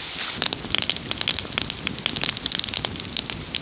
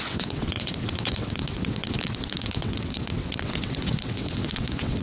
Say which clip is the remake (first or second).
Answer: second